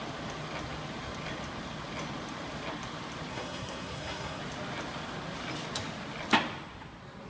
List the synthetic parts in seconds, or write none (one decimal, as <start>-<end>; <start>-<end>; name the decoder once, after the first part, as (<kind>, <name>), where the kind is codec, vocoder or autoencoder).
3.3-4.4 (codec, SNAC)